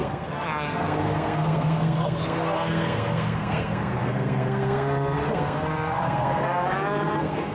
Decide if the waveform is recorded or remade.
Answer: remade